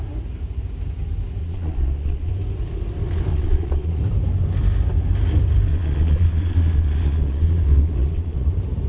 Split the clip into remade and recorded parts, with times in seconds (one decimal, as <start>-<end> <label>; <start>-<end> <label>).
0.0-1.4 recorded; 1.4-2.3 remade; 2.3-3.3 recorded; 3.3-4.0 remade; 4.0-5.7 recorded; 5.7-8.5 remade; 8.5-8.9 recorded